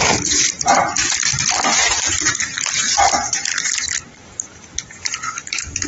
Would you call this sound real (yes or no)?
no